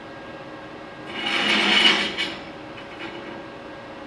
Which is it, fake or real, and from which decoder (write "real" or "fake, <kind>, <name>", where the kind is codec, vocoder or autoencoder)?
real